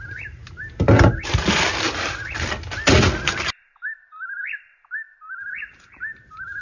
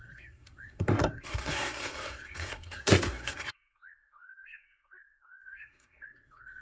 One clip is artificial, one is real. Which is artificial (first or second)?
second